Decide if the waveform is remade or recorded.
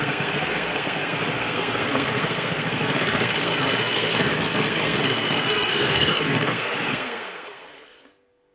remade